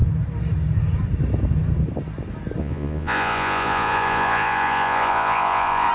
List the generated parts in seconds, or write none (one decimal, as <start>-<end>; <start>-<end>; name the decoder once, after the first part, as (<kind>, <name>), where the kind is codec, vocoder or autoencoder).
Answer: 2.6-5.9 (vocoder, Vocos)